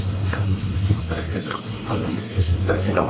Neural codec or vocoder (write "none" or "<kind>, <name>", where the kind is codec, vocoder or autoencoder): codec, SNAC